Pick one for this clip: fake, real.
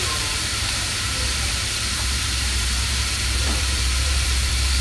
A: fake